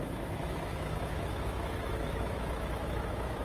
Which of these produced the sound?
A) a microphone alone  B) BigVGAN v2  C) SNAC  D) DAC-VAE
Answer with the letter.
D